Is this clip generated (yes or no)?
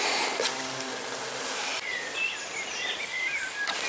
no